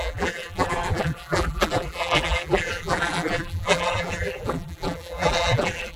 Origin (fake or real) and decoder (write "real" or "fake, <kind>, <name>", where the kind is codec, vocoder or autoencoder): fake, vocoder, BigVGAN v2